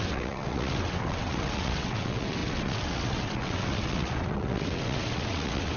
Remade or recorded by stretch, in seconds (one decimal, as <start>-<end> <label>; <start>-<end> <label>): 0.0-5.8 remade